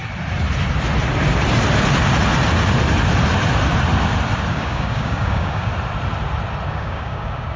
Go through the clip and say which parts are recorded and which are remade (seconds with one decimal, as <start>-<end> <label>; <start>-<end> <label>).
0.0-4.5 recorded; 4.5-5.7 remade; 5.7-6.7 recorded; 6.7-7.6 remade

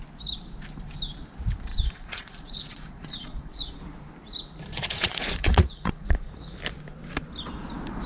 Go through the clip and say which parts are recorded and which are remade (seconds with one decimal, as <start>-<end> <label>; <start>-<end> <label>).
0.0-1.7 recorded; 1.7-3.8 remade; 3.8-4.7 recorded; 4.7-6.3 remade; 6.3-8.1 recorded

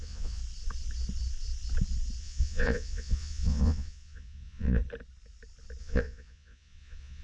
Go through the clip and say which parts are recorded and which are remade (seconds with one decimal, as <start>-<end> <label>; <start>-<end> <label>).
0.0-0.4 remade; 0.4-2.2 recorded; 2.2-4.8 remade; 4.8-5.8 recorded; 5.8-7.2 remade

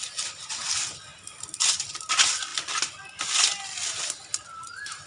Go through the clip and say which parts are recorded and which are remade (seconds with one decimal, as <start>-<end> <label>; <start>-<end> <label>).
0.0-5.1 recorded

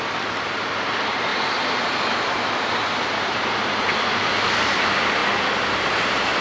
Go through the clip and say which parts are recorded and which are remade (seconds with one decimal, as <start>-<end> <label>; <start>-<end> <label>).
0.0-1.3 remade; 1.3-2.9 recorded; 2.9-5.2 remade; 5.2-5.9 recorded; 5.9-6.4 remade

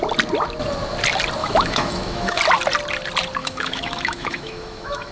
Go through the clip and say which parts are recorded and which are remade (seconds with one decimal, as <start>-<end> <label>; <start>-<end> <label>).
0.0-1.4 recorded; 1.4-2.4 remade; 2.4-3.4 recorded; 3.4-5.1 remade

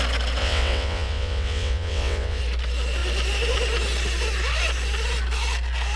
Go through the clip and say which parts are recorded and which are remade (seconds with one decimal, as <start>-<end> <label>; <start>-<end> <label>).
0.0-0.4 recorded; 0.4-2.4 remade; 2.4-6.0 recorded